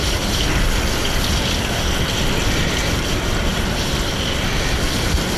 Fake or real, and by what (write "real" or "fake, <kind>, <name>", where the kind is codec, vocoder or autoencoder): real